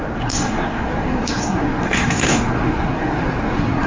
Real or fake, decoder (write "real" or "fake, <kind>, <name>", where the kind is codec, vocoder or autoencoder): fake, codec, SNAC